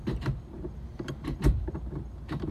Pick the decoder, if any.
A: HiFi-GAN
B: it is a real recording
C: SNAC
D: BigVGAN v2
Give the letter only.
D